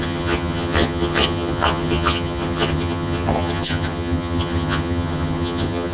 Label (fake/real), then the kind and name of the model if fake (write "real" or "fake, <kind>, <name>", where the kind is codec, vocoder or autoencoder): fake, vocoder, HiFi-GAN